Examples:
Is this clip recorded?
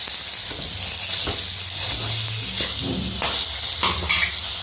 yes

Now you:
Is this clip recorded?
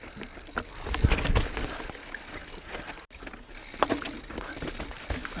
yes